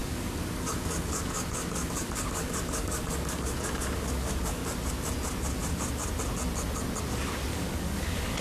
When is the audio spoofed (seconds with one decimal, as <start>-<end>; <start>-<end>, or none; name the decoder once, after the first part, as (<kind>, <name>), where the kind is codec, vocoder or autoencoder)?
0.0-4.6 (codec, DAC); 7.5-8.4